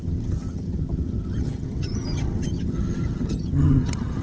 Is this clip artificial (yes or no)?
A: yes